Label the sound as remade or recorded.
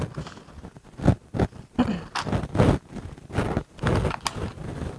recorded